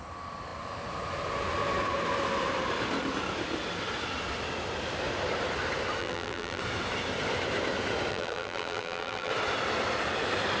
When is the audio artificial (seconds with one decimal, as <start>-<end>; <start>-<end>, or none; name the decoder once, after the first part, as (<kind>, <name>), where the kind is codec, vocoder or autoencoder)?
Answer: 6.0-6.6 (vocoder, BigVGAN v2); 8.1-9.3